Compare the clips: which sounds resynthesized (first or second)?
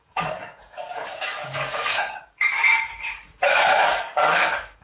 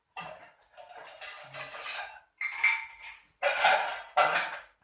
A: first